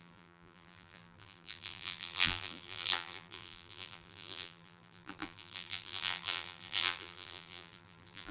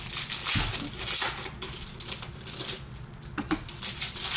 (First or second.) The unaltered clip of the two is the second